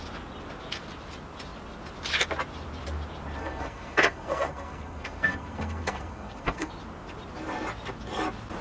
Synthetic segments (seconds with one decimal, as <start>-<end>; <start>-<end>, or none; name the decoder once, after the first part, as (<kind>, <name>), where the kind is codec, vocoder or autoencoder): 3.4-6.7 (codec, SNAC)